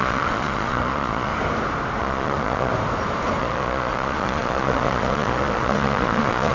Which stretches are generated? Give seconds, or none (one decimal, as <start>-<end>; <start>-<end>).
0.0-1.3; 2.0-2.7; 3.4-6.5